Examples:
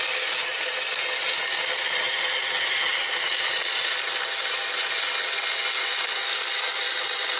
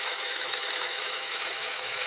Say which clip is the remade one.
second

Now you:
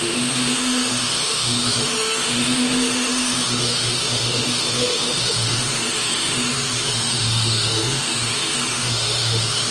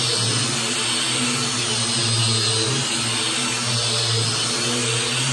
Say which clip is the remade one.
first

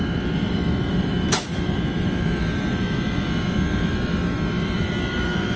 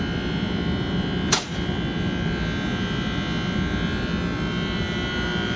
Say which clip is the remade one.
first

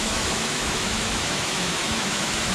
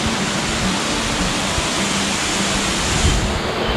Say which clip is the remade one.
first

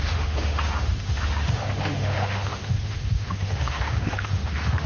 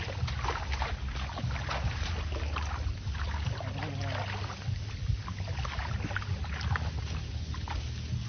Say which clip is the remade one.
first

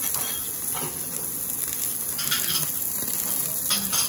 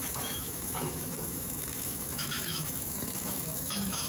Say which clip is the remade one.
second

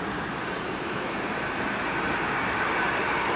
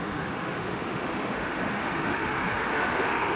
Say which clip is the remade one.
second